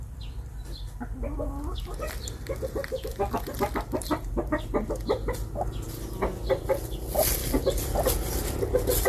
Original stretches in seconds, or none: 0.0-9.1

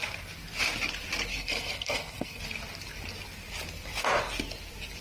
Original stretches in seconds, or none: 0.0-1.3; 2.4-5.0

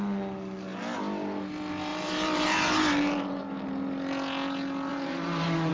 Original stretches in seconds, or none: 0.0-1.9; 3.4-4.9

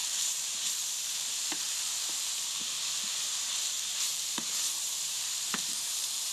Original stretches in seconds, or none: 1.8-3.9

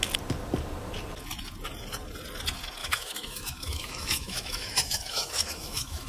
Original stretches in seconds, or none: 0.0-2.8

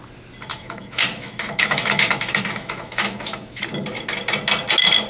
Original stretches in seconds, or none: 0.0-0.5; 3.6-5.1